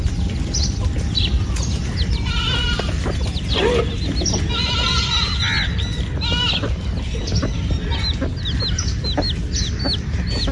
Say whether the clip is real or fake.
real